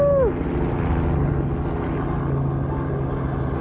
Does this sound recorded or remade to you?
recorded